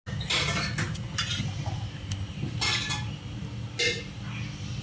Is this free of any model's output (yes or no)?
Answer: yes